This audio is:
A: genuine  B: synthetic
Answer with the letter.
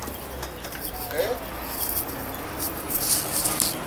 A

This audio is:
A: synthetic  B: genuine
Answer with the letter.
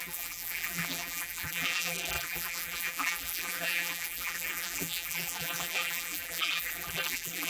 A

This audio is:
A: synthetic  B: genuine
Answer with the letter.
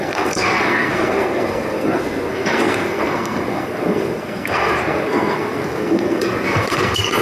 A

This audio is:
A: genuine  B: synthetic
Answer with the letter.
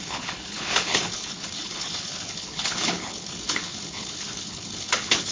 B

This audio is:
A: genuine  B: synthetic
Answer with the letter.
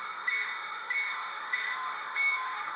B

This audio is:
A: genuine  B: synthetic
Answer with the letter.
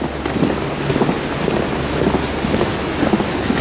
A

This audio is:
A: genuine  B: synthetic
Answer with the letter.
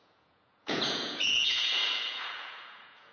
B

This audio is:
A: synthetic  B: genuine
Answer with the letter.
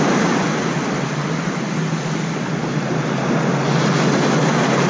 B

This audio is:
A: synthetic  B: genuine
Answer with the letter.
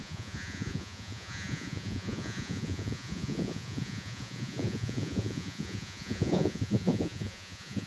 A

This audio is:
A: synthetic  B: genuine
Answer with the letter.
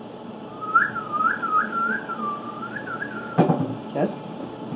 A